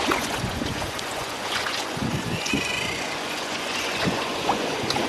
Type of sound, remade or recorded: remade